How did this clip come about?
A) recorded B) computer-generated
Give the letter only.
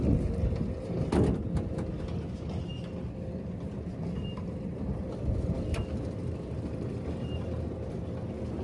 A